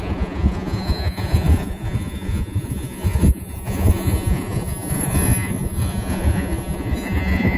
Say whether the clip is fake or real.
fake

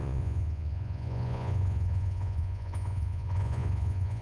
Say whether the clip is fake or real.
fake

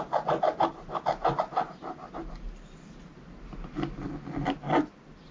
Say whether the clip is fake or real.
real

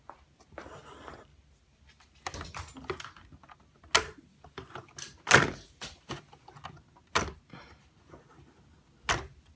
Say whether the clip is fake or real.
real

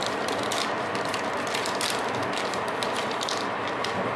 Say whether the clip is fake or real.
real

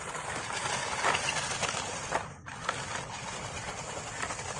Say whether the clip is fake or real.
real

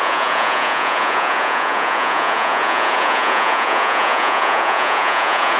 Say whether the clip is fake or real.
fake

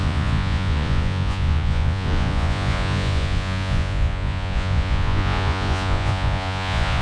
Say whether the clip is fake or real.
fake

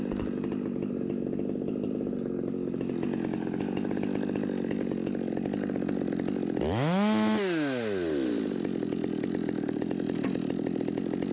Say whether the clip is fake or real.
real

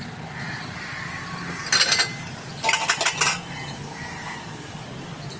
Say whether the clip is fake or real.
real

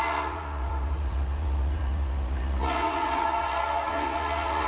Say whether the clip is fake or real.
fake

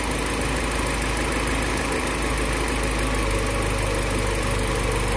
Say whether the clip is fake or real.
real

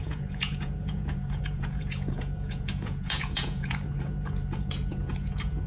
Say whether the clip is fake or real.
fake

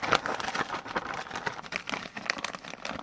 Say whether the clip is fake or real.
real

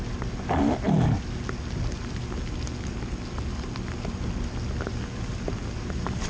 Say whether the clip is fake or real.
real